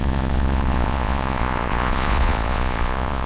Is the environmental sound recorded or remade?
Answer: remade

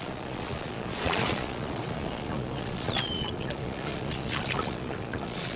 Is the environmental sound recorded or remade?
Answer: remade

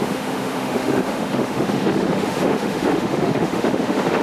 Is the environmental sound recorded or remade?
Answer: remade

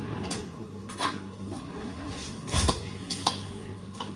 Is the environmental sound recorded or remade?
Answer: remade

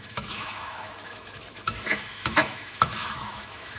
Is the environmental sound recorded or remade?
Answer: remade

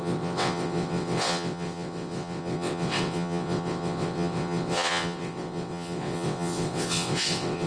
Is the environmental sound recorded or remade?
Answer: remade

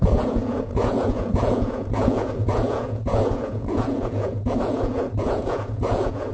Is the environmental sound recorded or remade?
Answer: remade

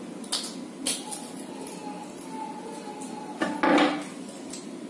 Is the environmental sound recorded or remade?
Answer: recorded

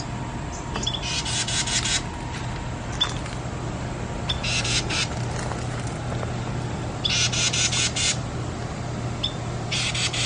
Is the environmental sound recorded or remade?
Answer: recorded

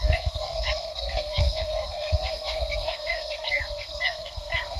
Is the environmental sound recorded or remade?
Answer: remade